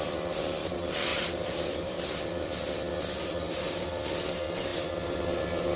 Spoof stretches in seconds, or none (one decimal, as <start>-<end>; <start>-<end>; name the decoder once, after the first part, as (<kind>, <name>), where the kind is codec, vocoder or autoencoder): 1.1-2.1 (vocoder, BigVGAN v2)